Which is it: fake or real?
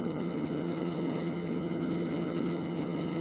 fake